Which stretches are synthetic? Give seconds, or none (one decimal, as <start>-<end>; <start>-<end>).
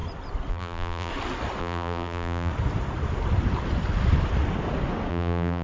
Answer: 0.5-1.1; 1.6-2.5; 5.1-5.6